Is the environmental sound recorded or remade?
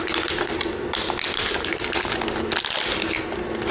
recorded